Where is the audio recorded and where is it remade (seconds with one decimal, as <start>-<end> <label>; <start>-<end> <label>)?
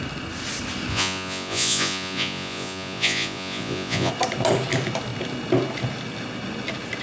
0.0-0.9 recorded; 0.9-4.1 remade; 4.1-7.0 recorded